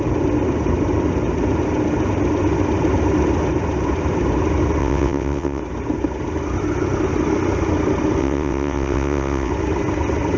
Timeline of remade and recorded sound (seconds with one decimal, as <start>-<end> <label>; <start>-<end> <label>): 0.0-4.8 recorded; 4.8-5.6 remade; 5.6-8.2 recorded; 8.2-9.5 remade; 9.5-10.4 recorded